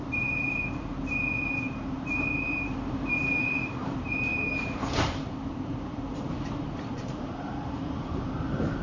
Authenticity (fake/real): fake